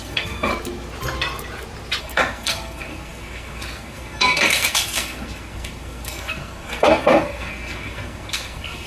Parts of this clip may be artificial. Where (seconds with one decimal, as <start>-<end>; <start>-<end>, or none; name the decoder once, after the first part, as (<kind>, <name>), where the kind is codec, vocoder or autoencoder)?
0.0-0.5 (codec, SNAC); 2.0-8.9